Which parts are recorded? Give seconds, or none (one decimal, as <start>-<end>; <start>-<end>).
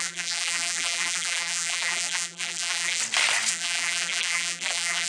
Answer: 3.0-3.5